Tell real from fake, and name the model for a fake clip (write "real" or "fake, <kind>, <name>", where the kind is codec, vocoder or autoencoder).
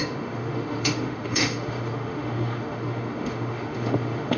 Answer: fake, autoencoder, DAC-VAE